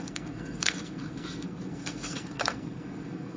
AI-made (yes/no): yes